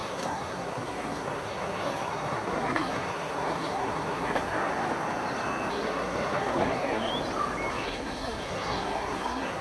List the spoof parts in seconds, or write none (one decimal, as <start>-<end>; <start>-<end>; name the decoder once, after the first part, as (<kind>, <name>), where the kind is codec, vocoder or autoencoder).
0.0-4.7 (codec, SNAC); 5.7-7.1; 7.7-9.6